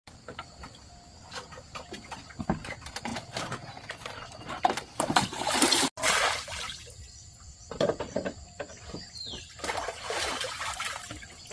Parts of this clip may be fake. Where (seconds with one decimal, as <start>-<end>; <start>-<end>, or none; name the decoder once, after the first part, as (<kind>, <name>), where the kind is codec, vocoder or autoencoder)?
none